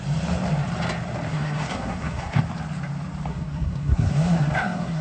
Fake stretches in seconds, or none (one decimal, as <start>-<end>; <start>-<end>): 1.3-2.4; 3.3-5.0